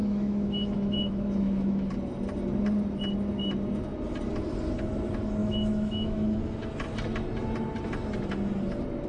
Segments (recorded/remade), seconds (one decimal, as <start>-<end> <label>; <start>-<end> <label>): 0.0-1.9 remade; 1.9-5.4 recorded; 5.4-6.4 remade; 6.4-9.1 recorded